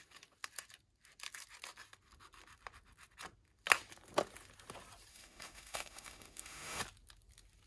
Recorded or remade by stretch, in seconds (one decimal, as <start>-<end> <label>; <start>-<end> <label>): 0.0-5.1 recorded; 5.1-6.8 remade; 6.8-7.7 recorded

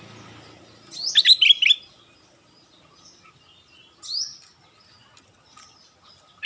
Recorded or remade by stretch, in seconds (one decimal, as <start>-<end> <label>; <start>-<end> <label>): 0.0-6.5 recorded

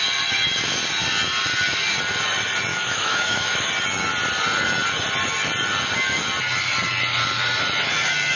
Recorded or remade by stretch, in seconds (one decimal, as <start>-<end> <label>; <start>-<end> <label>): 0.0-2.7 recorded; 2.7-3.7 remade; 3.7-8.4 recorded

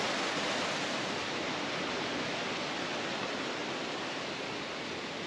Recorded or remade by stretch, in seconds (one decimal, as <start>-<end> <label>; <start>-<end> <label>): 0.0-5.3 recorded

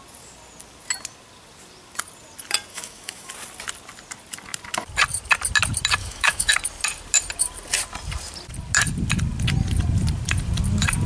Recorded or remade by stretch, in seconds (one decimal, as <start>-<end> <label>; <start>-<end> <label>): 0.0-2.7 recorded; 2.7-3.3 remade; 3.3-6.0 recorded; 6.0-6.5 remade; 6.5-11.1 recorded

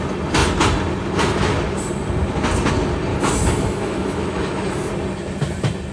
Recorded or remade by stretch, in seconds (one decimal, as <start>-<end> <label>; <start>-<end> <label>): 0.0-3.1 recorded; 3.1-4.9 remade; 4.9-5.9 recorded

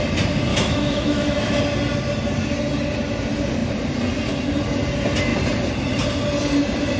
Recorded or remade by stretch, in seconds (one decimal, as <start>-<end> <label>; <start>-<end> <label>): 0.0-0.5 recorded; 0.5-1.6 remade; 1.6-7.0 recorded

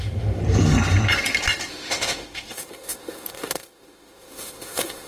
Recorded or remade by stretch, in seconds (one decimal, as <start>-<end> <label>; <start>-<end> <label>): 0.0-0.4 remade; 0.4-1.7 recorded; 1.7-5.1 remade